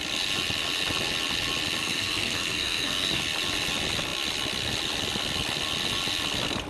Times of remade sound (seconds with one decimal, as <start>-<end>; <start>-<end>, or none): 1.8-3.2